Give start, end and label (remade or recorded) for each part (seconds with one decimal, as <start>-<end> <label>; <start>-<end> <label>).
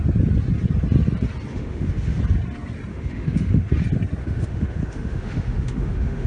0.0-1.5 recorded; 1.5-2.2 remade; 2.2-2.9 recorded; 2.9-3.7 remade; 3.7-4.2 recorded; 4.2-6.3 remade